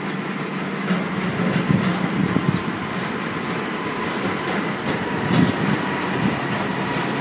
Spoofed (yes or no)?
no